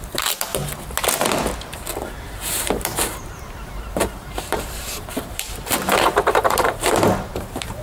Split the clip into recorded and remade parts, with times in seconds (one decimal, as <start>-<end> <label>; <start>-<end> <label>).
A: 0.0-0.6 remade; 0.6-2.1 recorded; 2.1-7.8 remade